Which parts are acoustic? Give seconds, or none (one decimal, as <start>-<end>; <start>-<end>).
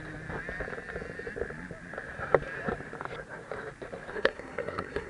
0.0-4.1